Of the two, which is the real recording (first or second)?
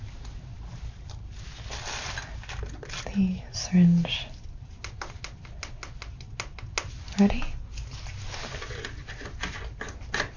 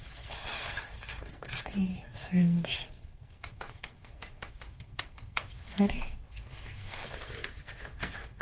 first